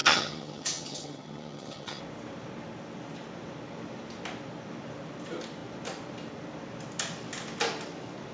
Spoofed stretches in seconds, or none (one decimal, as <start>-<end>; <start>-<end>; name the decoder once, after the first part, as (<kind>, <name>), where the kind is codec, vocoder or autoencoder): 0.0-2.0 (vocoder, HiFi-GAN)